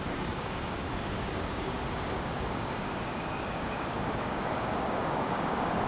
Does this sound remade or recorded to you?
remade